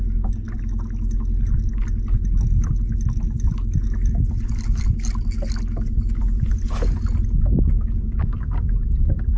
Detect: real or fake real